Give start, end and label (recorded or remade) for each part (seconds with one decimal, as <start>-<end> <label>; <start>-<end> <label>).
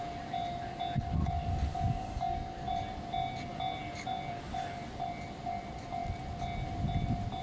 0.0-1.7 recorded; 1.7-2.7 remade; 2.7-7.4 recorded